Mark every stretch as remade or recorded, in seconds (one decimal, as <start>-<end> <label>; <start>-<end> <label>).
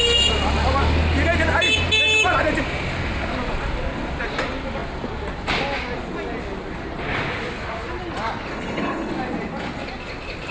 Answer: 0.0-8.5 recorded; 8.5-9.1 remade; 9.1-10.5 recorded